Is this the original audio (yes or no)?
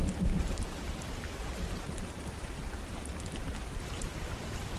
yes